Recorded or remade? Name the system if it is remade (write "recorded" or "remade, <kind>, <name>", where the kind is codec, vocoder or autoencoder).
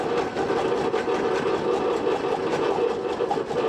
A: recorded